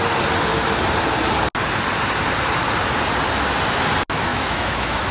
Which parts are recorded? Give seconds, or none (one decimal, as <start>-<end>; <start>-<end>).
0.0-4.3